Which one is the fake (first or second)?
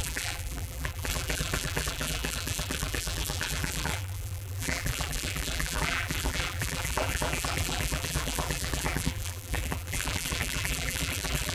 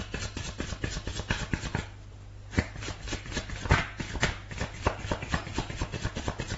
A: first